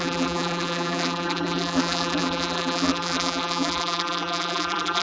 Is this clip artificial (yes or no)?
yes